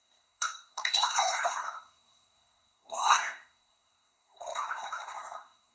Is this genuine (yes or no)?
no